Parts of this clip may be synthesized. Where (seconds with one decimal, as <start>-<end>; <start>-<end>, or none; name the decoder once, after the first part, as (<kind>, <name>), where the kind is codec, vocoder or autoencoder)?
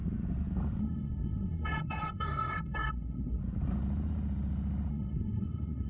0.8-3.4 (codec, SNAC); 4.9-5.9